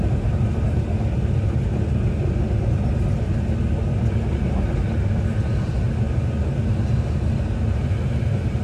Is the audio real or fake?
real